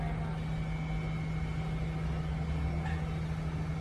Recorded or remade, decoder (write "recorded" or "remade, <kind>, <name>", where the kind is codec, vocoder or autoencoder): recorded